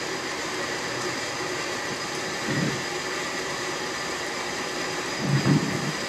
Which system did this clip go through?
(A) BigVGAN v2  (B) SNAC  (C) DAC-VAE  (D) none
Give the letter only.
A